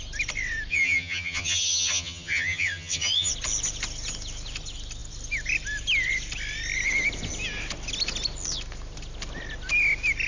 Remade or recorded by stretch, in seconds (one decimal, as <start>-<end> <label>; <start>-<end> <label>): 0.0-0.7 recorded; 0.7-3.3 remade; 3.3-10.3 recorded